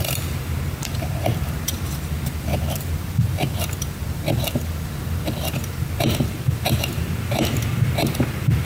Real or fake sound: fake